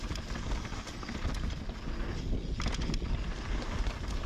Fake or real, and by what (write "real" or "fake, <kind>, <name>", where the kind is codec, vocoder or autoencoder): real